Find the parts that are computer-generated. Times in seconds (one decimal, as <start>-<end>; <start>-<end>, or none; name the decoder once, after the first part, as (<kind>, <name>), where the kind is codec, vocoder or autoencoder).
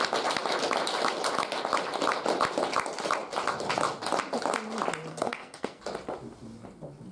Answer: 5.1-5.8 (codec, SNAC)